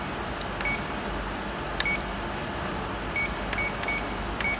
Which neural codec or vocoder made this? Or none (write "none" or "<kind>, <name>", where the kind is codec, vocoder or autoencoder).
none